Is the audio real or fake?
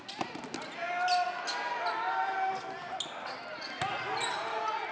real